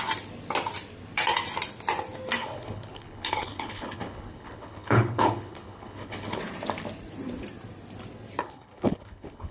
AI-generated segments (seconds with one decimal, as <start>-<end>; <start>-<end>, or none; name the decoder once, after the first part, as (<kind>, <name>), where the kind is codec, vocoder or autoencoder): 2.4-6.4 (codec, HILCodec); 8.4-9.5